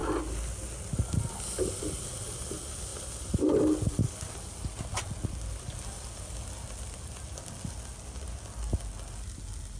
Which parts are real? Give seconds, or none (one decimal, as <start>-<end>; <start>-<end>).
0.0-9.8